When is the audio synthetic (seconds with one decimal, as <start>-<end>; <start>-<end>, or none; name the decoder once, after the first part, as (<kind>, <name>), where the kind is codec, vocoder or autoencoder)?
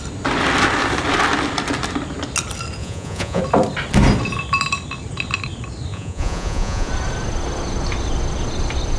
2.8-3.4 (vocoder, Vocos); 5.9-6.9